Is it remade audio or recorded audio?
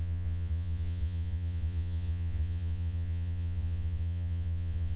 remade